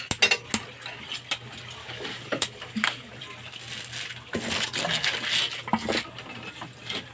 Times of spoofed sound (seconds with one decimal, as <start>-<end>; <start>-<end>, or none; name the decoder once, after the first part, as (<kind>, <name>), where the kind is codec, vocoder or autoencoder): 1.8-3.2 (codec, DAC)